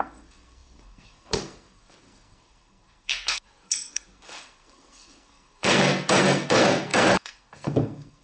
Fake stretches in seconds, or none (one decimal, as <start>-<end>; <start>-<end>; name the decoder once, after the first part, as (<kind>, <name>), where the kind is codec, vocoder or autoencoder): 0.0-8.2 (codec, SNAC)